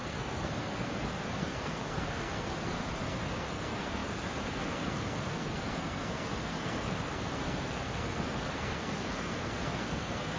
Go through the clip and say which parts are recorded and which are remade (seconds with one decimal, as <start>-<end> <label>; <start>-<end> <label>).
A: 0.0-10.4 remade